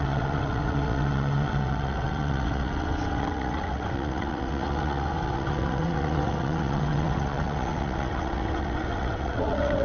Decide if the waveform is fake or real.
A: fake